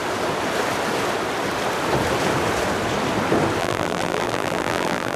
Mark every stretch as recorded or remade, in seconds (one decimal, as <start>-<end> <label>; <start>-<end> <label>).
0.0-3.6 recorded; 3.6-5.2 remade